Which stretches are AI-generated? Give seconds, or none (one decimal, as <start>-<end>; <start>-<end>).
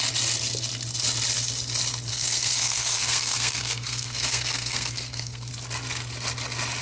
2.1-5.5